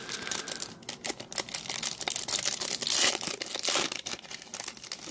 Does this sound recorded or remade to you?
recorded